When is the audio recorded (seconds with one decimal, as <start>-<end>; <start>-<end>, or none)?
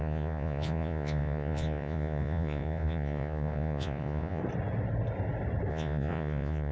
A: 4.4-5.7